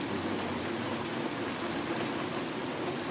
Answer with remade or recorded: recorded